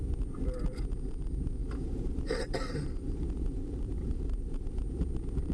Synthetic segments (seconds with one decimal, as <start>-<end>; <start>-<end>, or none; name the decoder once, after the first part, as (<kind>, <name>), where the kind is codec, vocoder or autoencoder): 1.6-4.8 (vocoder, BigVGAN v2)